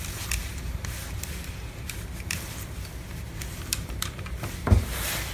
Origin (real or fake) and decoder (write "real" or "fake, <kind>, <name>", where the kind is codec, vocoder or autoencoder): real